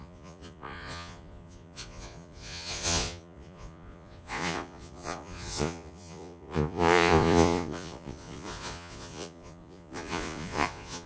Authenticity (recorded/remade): remade